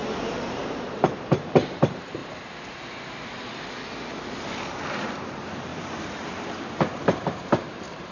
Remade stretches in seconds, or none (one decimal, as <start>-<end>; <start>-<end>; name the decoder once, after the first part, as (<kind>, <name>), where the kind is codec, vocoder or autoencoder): 0.0-2.2 (vocoder, BigVGAN v2); 4.7-5.7; 6.5-8.1

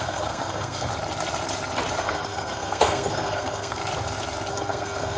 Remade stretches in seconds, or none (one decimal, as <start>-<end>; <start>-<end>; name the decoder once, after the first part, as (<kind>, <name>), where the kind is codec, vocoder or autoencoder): 0.0-0.9 (codec, SNAC); 2.0-3.8; 4.5-5.2